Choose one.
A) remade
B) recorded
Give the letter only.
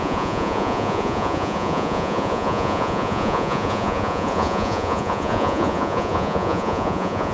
A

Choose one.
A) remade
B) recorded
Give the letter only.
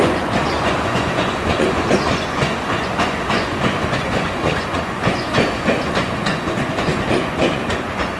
A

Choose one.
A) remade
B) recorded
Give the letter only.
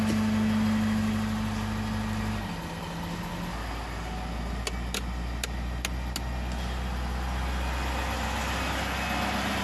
B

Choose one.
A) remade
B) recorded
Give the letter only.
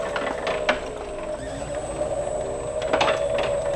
B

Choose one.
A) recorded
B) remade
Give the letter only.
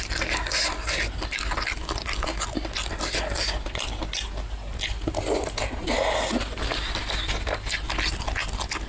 A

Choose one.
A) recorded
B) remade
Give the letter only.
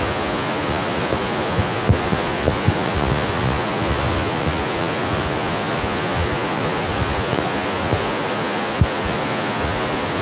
B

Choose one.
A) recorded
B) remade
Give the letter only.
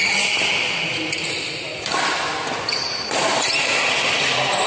A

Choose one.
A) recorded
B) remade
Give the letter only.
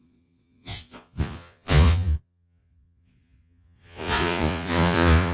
B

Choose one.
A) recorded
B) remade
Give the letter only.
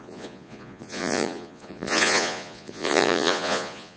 B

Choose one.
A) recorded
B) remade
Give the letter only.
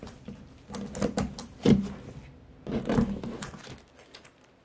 A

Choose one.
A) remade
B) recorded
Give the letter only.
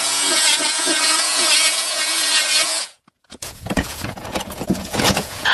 A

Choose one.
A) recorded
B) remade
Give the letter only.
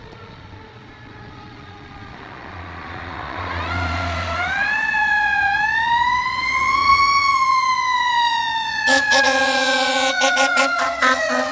B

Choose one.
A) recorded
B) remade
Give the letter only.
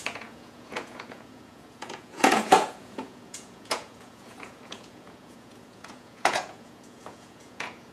B